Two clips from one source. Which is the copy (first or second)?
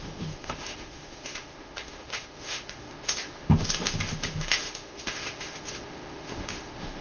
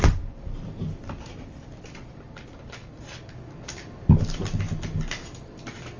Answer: first